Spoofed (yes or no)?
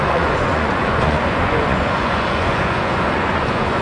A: yes